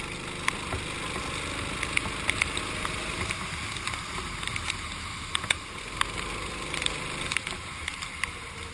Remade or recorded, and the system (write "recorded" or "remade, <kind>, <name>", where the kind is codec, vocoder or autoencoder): recorded